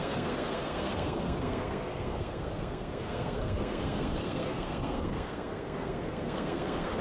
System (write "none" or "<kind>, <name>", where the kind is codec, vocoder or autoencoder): codec, SNAC